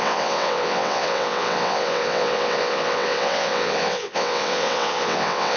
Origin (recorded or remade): remade